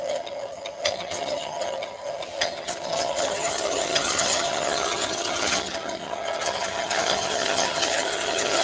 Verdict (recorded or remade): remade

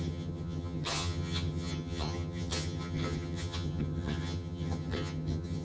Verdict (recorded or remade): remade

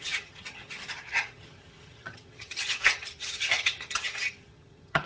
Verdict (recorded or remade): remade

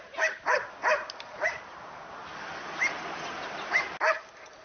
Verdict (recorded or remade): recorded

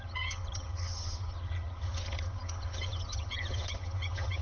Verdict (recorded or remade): remade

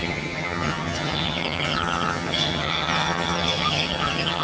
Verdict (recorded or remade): remade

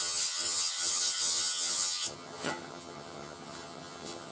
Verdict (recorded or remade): remade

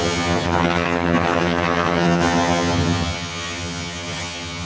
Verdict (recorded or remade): remade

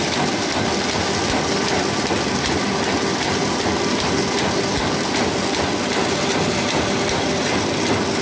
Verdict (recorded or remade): recorded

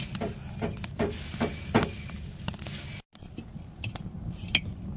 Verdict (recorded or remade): recorded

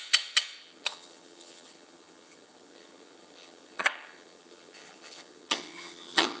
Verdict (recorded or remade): remade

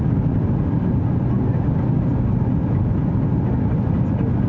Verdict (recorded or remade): recorded